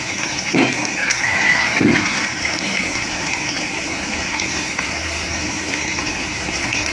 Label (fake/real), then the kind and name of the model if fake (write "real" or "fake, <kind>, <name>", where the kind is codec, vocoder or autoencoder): fake, codec, SNAC